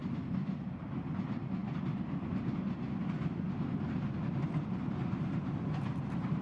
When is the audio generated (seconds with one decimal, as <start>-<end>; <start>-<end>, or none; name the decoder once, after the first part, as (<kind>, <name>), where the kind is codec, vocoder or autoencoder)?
none